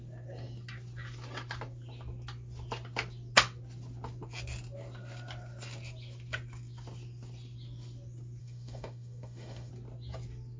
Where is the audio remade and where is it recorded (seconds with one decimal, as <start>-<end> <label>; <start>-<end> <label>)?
0.0-8.4 recorded; 8.4-9.7 remade; 9.7-10.6 recorded